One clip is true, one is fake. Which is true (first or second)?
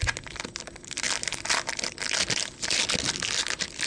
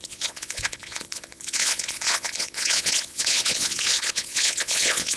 first